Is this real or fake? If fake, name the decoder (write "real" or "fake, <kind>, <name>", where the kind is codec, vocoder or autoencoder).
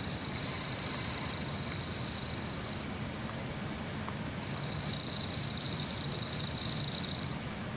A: real